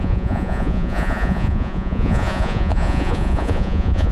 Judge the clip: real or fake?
fake